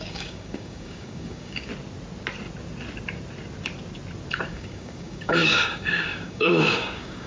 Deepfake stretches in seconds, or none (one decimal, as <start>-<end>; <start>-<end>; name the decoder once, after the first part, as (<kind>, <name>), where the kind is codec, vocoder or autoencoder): 0.0-1.7 (codec, DAC); 4.5-7.3